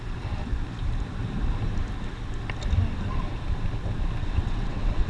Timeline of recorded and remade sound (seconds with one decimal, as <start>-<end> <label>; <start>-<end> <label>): 0.0-4.2 recorded; 4.2-5.1 remade